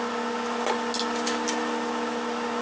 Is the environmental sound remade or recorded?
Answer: recorded